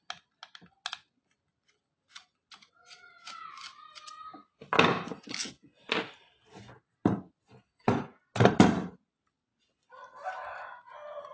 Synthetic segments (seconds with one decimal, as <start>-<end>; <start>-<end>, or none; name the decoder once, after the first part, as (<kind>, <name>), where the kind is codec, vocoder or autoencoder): 9.5-10.3 (vocoder, BigVGAN v2)